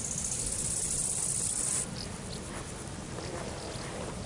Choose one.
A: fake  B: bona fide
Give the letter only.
B